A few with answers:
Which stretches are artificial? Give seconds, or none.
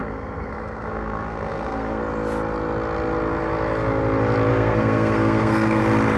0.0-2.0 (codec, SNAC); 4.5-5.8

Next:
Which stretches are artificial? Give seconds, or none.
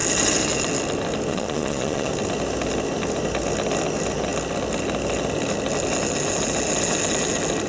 1.3-2.1 (vocoder, Vocos)